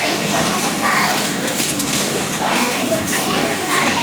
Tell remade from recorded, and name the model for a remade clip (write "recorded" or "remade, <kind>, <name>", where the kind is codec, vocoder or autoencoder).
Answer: remade, codec, DAC